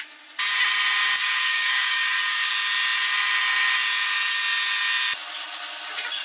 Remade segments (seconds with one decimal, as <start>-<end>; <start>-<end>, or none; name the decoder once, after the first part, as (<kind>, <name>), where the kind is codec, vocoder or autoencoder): 1.2-2.5 (codec, DAC)